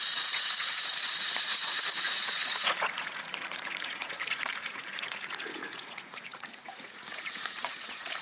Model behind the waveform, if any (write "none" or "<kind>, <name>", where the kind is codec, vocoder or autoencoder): vocoder, Vocos